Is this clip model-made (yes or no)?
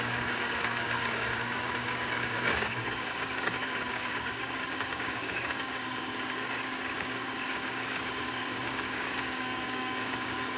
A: yes